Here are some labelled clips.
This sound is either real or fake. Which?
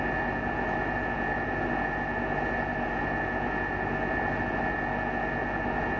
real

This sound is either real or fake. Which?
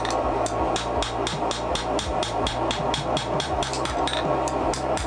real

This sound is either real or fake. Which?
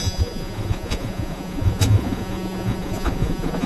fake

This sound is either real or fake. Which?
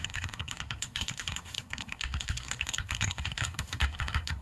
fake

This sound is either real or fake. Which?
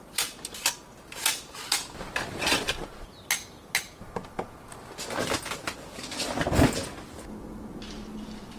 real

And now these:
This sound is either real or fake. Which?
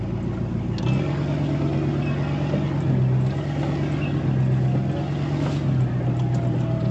real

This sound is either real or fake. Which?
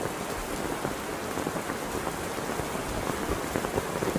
real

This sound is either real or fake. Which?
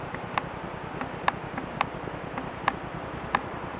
real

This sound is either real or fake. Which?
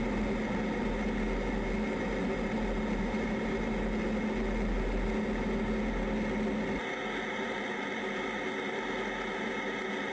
real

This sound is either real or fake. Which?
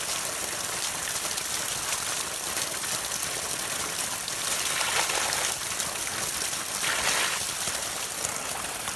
real